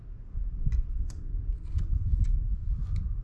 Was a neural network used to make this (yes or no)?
no